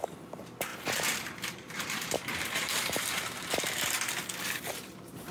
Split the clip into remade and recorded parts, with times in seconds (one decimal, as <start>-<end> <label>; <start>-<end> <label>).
0.0-0.7 recorded; 0.7-3.9 remade; 3.9-5.3 recorded